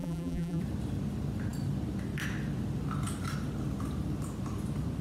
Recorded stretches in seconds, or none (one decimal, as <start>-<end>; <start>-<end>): 0.6-5.0